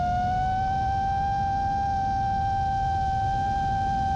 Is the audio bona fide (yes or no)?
yes